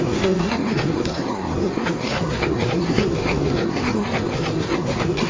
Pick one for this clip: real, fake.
fake